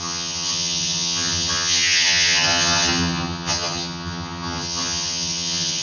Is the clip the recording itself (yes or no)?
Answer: no